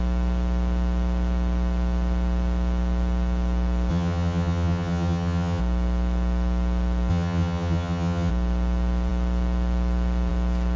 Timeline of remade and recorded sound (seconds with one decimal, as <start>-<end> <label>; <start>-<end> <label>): 0.0-3.9 recorded; 3.9-5.6 remade; 5.6-7.1 recorded; 7.1-8.3 remade; 8.3-10.8 recorded